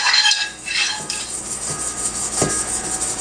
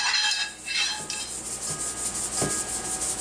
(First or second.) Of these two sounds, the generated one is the first